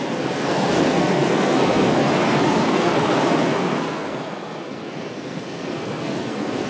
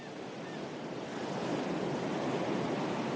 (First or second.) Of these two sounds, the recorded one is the second